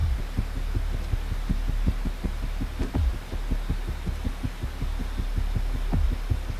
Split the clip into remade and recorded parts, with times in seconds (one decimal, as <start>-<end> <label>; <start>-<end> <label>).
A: 0.0-6.6 recorded